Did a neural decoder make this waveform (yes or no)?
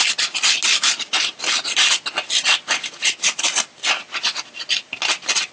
no